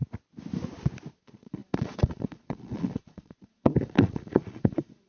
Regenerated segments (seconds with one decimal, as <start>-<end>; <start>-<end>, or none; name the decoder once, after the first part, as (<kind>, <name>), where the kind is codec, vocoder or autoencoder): 1.2-5.1 (vocoder, Vocos)